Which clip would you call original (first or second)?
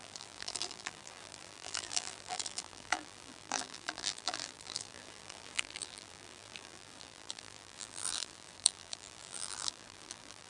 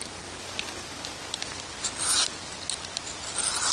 second